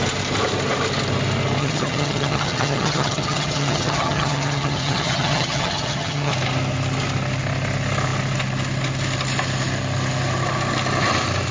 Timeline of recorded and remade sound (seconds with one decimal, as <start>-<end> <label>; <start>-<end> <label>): 0.0-1.6 recorded; 1.6-6.3 remade; 6.3-11.5 recorded